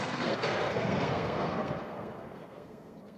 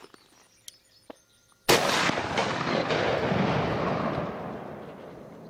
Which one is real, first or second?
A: second